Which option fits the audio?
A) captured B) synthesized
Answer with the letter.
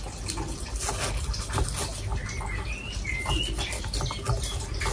A